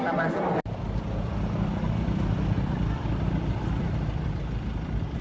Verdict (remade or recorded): remade